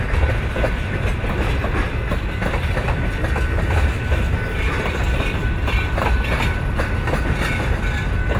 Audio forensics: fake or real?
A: real